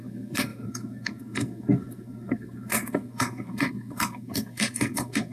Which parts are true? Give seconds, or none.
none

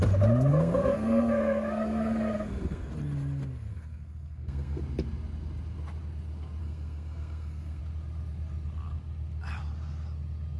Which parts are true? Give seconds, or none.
0.0-0.5; 2.9-3.7; 4.8-6.6; 7.8-10.6

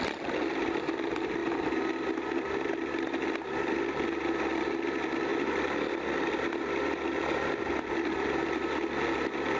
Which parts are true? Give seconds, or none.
0.0-9.6

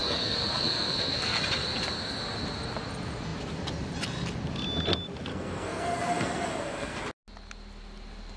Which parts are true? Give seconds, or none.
1.4-5.3; 7.0-8.4

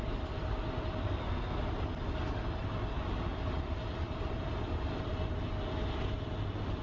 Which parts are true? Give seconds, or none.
0.0-1.0; 1.6-6.8

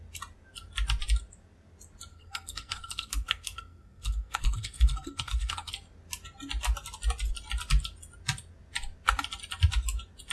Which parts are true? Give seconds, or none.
0.0-2.1; 5.7-10.3

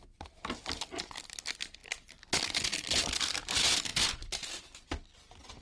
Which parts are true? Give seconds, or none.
0.0-5.6

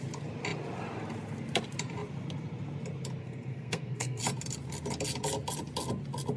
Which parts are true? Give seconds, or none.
0.0-3.2; 4.2-6.4